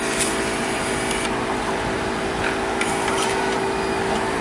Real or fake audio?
real